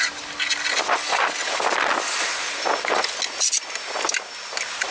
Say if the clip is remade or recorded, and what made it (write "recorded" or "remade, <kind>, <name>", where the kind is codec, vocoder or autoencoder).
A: recorded